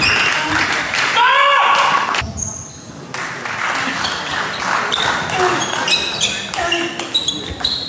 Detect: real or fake real